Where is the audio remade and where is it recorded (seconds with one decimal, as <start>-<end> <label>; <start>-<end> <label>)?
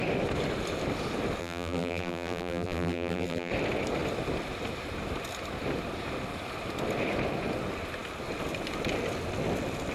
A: 0.0-1.4 recorded; 1.4-3.5 remade; 3.5-9.9 recorded